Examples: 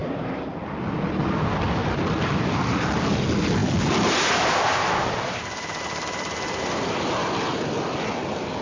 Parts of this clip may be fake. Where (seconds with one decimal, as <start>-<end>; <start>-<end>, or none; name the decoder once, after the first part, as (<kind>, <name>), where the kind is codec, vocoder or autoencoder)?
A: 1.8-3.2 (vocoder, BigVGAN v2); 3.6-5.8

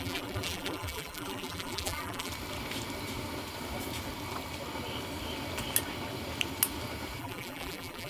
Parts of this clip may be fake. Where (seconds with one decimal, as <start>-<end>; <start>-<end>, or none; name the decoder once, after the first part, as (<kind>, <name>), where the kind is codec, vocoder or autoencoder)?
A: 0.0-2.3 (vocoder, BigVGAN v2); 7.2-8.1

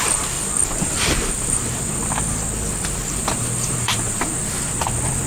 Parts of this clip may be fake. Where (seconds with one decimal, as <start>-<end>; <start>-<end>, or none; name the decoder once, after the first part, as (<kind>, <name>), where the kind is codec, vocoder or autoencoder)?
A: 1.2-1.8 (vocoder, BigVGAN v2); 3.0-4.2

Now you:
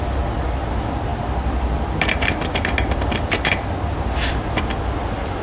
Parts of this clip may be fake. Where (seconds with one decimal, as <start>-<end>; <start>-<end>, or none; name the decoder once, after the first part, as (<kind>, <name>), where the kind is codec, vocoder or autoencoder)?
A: 0.0-5.4 (vocoder, BigVGAN v2)

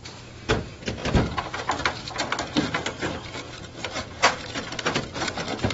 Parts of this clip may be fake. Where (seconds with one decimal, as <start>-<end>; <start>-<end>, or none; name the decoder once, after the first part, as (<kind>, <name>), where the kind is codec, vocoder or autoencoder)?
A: 2.8-4.8 (vocoder, BigVGAN v2)

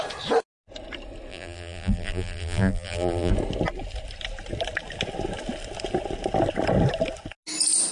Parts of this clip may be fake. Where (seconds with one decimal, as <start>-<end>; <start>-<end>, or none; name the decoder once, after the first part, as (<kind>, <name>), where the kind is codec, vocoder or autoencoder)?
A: 1.3-3.3 (vocoder, BigVGAN v2)

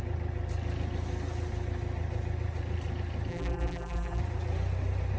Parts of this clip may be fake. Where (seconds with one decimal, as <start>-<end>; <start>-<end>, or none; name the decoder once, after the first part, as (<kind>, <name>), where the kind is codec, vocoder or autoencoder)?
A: 3.3-4.2 (vocoder, BigVGAN v2)